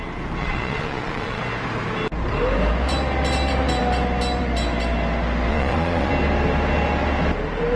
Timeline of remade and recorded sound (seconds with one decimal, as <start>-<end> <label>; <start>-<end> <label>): 0.0-0.4 recorded; 0.4-1.4 remade; 1.4-5.5 recorded; 5.5-6.1 remade; 6.1-7.8 recorded

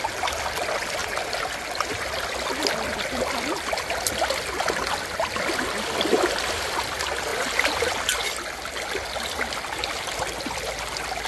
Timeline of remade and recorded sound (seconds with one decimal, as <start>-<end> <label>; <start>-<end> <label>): 0.0-11.3 recorded

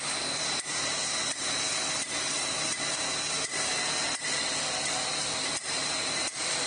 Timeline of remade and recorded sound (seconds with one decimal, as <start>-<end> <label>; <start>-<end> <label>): 0.0-6.7 recorded

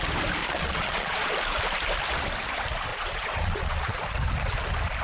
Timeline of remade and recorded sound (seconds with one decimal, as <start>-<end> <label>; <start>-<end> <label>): 0.0-0.4 recorded; 0.4-1.3 remade; 1.3-2.9 recorded; 2.9-3.9 remade; 3.9-5.0 recorded

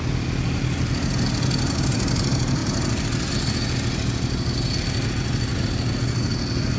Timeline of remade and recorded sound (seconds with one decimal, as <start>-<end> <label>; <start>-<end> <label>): 0.0-6.8 recorded